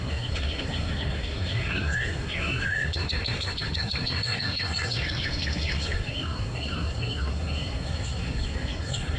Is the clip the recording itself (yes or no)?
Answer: no